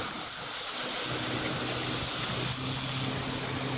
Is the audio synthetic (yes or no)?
no